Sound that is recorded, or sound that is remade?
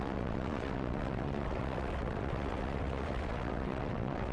remade